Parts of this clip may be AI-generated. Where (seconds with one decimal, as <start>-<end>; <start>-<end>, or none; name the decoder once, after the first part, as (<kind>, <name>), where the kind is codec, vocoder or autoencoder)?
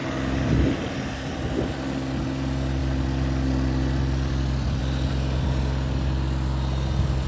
0.0-2.2 (vocoder, BigVGAN v2); 2.8-4.8